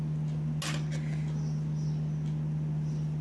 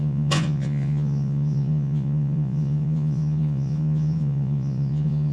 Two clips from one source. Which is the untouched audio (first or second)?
first